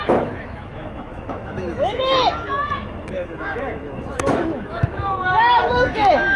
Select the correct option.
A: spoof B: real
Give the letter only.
A